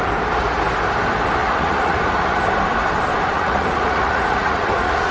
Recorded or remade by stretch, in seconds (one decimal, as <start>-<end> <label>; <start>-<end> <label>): 0.0-1.4 recorded; 1.4-2.4 remade; 2.4-3.3 recorded; 3.3-5.1 remade